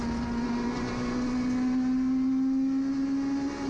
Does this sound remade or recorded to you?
recorded